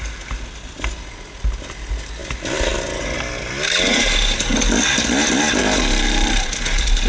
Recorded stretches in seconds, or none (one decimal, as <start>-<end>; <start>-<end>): 0.0-5.6; 6.5-7.1